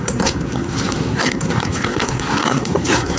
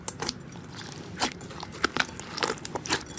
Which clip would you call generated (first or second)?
first